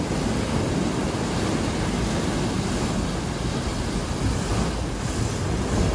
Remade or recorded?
recorded